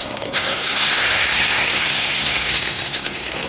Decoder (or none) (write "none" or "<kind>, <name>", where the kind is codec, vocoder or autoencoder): codec, SNAC